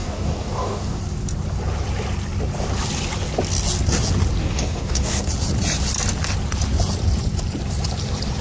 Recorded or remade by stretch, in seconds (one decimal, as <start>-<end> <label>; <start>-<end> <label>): 0.0-1.0 remade; 1.0-4.4 recorded; 4.4-5.3 remade; 5.3-8.4 recorded